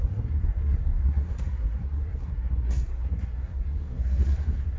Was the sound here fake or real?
fake